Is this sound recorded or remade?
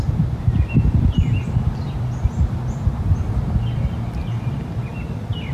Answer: recorded